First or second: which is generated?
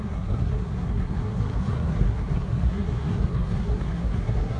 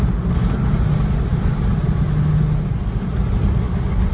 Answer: first